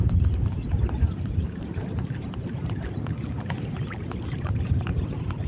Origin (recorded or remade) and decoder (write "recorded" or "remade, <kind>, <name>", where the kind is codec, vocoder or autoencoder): remade, vocoder, BigVGAN v2